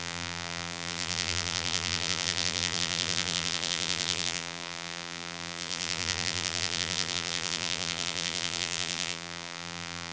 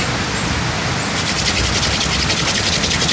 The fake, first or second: first